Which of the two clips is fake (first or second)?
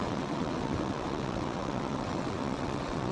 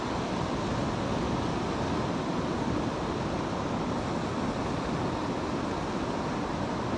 first